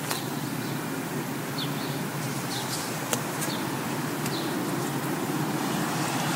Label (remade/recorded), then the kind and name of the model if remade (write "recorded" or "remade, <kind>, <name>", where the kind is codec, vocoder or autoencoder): recorded